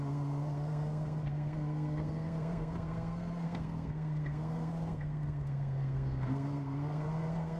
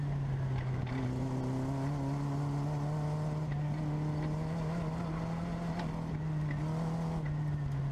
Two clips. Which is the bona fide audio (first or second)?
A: second